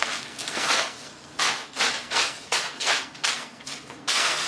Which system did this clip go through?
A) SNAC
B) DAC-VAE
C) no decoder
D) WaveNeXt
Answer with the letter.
A